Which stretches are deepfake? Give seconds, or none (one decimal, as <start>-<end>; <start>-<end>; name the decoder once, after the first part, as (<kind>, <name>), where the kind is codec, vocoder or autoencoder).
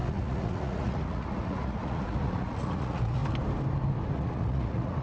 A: 0.0-3.2 (vocoder, Vocos); 4.1-5.0